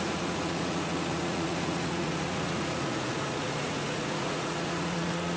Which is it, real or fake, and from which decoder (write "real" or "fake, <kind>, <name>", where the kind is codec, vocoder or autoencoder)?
fake, vocoder, Vocos